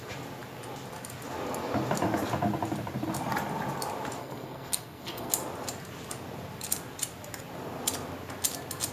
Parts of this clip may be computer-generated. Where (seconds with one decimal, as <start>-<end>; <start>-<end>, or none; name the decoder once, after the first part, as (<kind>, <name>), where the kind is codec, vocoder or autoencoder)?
4.2-5.3 (codec, SNAC)